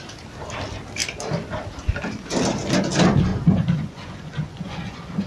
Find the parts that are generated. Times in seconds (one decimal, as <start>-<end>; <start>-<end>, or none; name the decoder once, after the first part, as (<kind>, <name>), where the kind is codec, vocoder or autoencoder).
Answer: 3.3-5.3 (vocoder, Vocos)